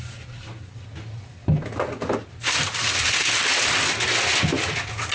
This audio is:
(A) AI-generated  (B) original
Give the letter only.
B